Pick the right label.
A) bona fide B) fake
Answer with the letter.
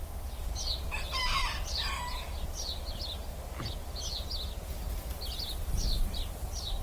A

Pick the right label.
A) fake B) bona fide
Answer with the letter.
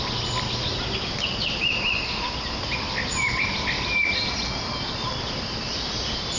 B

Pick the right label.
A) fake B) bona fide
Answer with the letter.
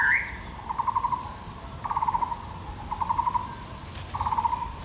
B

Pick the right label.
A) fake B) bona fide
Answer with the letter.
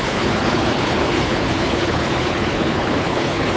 A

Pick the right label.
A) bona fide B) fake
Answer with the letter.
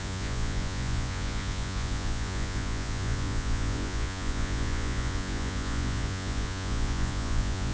B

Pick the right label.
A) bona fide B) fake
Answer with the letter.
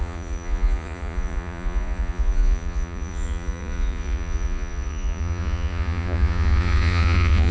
B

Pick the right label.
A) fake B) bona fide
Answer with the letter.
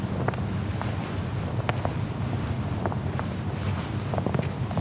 B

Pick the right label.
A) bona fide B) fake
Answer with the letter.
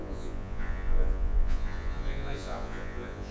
B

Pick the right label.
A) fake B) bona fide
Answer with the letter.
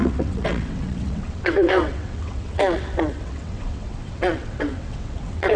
A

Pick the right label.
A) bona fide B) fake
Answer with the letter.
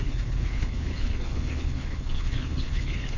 B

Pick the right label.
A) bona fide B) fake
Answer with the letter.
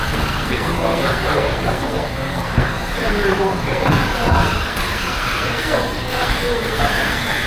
B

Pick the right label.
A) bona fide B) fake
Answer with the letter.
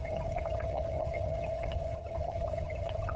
B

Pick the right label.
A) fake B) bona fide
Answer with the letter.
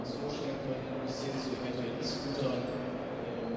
B